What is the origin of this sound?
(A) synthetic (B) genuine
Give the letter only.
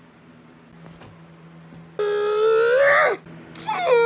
B